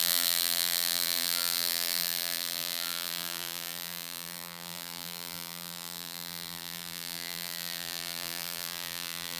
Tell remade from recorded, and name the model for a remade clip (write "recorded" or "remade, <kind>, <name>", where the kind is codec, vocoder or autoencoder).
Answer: remade, vocoder, BigVGAN v2